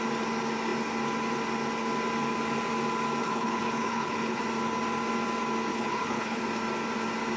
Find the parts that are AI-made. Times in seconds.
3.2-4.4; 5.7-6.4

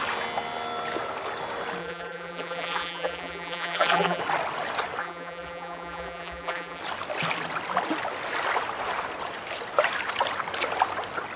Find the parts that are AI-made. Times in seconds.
1.8-4.2; 5.0-6.8

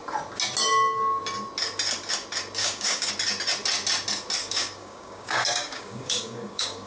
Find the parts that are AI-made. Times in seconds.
2.6-3.1; 4.4-6.9